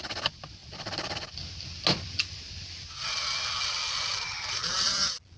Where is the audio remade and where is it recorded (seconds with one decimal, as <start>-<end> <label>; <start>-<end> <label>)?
0.0-5.4 recorded